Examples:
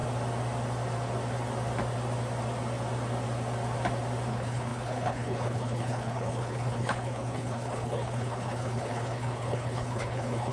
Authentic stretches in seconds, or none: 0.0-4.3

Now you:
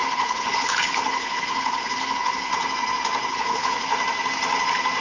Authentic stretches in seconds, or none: 2.5-3.3; 3.9-5.0

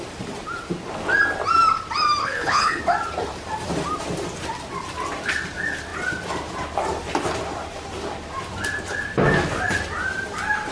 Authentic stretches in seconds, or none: 0.0-2.2; 2.8-10.7

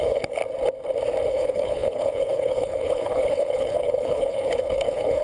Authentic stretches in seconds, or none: 0.4-1.3